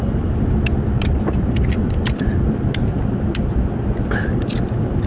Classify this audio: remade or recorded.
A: recorded